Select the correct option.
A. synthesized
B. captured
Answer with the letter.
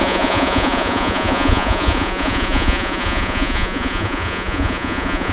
A